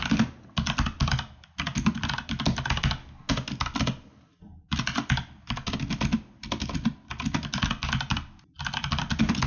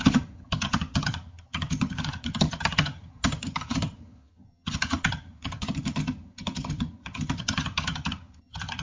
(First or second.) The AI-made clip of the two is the second